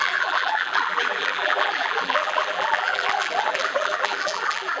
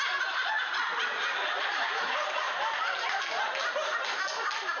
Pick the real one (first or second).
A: second